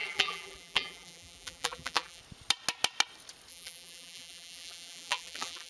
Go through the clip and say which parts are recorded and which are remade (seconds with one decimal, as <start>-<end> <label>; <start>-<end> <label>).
0.0-2.2 remade; 2.2-3.5 recorded; 3.5-5.7 remade